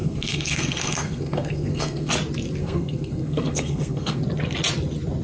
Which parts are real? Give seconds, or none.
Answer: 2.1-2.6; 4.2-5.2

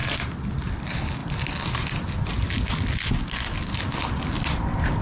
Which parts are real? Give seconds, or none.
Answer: 0.0-5.0